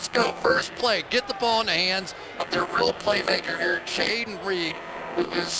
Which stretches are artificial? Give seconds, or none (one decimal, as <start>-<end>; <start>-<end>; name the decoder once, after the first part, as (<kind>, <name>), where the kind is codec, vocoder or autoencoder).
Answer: 0.0-0.8 (codec, SNAC); 2.4-4.1; 4.7-5.6